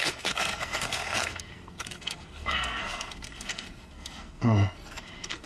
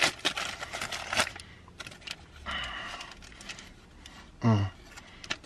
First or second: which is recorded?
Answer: second